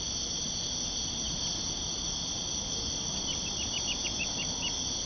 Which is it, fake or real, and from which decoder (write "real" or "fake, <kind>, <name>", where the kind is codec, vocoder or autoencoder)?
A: real